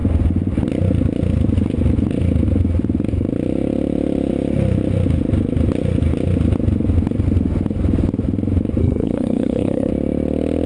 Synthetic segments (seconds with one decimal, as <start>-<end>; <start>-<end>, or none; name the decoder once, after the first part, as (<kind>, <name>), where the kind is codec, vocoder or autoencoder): 8.8-9.9 (codec, SNAC)